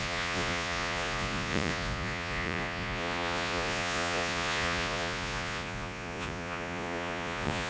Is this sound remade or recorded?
remade